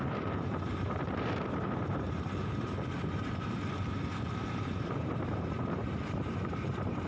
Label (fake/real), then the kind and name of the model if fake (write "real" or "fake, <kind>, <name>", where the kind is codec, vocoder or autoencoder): fake, vocoder, BigVGAN v2